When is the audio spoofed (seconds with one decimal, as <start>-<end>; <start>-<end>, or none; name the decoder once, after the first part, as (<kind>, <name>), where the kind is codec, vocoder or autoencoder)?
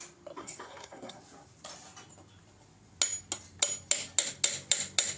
0.4-1.2 (codec, SNAC)